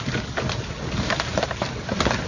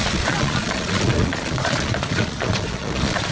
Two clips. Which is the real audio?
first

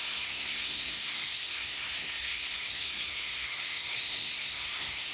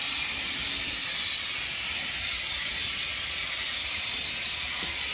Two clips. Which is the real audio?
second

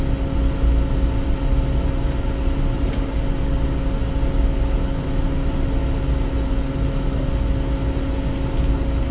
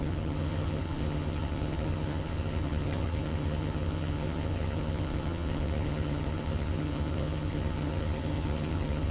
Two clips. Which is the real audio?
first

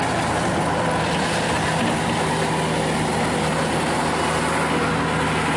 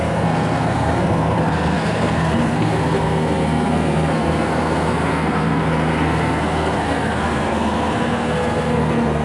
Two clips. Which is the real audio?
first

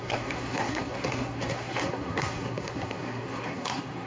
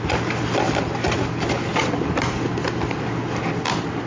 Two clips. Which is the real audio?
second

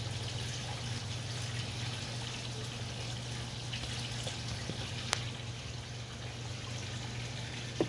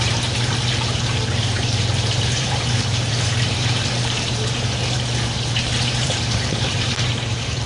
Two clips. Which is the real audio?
first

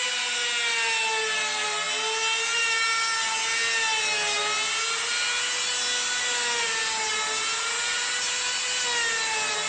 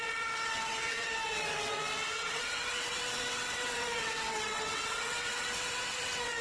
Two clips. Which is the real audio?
first